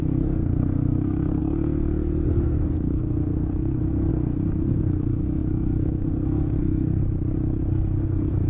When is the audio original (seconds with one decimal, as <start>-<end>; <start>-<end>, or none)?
7.0-7.7